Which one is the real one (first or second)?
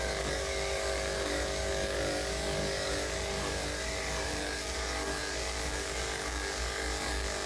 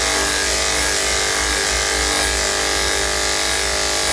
second